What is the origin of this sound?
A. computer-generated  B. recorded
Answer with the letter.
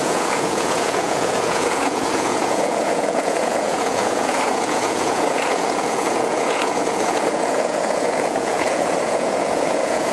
A